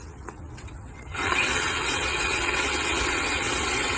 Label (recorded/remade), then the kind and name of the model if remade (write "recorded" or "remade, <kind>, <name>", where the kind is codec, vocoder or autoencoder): remade, vocoder, WaveNeXt